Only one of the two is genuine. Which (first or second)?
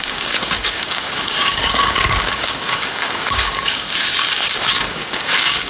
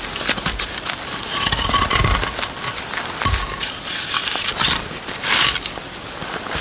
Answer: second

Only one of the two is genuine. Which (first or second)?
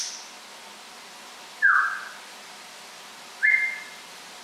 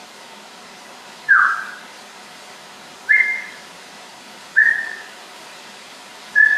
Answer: first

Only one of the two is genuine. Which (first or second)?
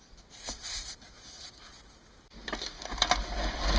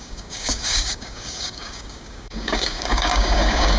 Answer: first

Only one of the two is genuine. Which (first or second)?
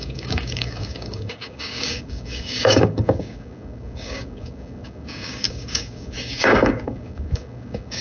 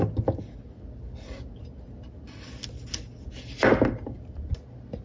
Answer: second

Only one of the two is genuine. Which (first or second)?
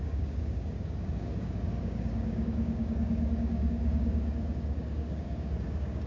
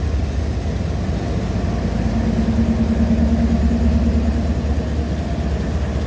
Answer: second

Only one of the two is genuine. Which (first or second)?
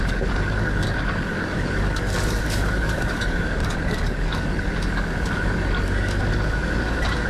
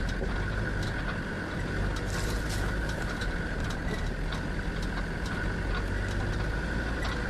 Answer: second